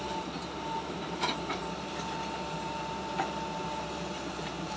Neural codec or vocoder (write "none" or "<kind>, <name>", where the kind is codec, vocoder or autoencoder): vocoder, BigVGAN v2